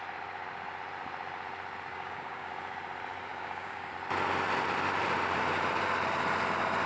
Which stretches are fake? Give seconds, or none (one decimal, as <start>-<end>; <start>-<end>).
1.9-2.5; 3.3-3.9